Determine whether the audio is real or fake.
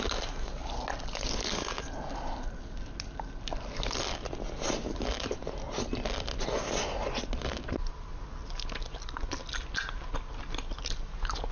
real